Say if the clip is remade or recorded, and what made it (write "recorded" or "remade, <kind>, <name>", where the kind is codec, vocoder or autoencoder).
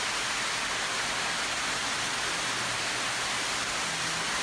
recorded